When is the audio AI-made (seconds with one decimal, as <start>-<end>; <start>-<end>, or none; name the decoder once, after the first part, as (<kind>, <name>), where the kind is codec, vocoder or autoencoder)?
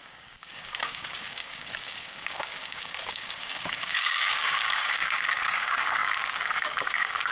0.0-7.3 (codec, DAC)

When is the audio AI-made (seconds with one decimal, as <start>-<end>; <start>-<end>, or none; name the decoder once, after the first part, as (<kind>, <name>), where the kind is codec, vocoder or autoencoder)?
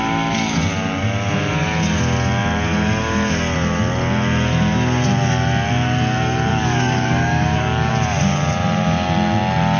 6.5-7.9 (codec, DAC)